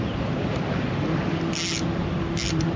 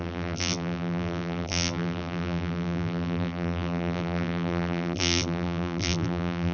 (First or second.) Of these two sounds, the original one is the first